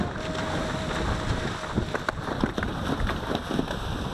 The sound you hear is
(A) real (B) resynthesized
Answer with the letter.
A